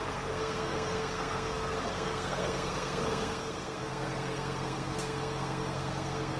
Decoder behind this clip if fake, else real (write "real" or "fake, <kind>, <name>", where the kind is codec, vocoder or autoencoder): fake, codec, SNAC